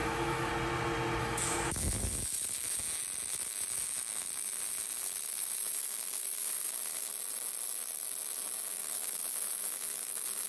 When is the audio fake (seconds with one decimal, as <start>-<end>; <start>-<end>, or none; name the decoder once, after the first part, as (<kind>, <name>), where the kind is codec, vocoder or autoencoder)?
0.0-0.5 (autoencoder, DAC-VAE); 1.2-2.8; 3.3-7.1; 8.8-10.5